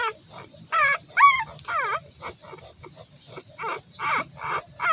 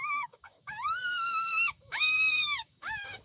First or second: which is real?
first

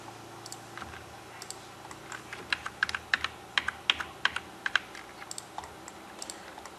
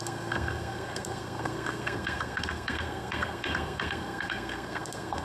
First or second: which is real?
first